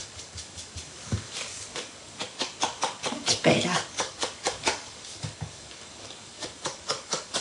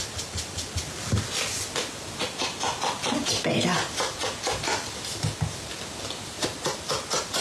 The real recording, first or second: second